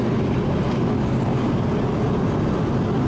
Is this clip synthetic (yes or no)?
no